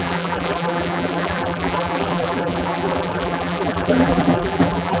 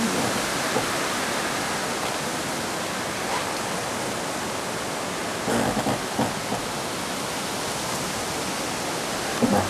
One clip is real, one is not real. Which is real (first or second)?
second